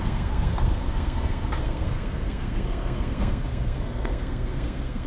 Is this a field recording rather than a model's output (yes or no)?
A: no